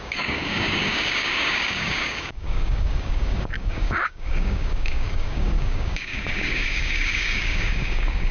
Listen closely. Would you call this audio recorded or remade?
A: remade